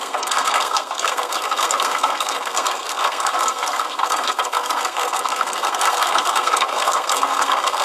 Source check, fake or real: fake